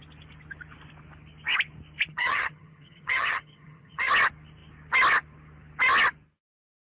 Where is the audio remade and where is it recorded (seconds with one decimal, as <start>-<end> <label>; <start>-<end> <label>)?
0.0-2.1 recorded; 2.1-4.1 remade; 4.1-6.9 recorded